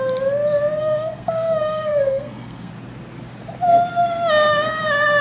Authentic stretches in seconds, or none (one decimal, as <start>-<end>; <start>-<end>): 0.0-0.8; 2.7-5.2